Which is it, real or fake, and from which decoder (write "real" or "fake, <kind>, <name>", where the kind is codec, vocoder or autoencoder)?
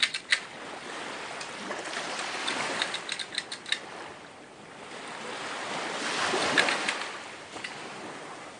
real